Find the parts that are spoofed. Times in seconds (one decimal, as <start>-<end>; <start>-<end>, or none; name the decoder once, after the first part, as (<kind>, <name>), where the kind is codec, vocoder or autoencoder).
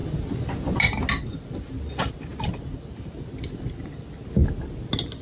none